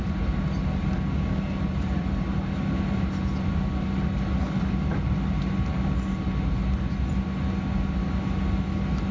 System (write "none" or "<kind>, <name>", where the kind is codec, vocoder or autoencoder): none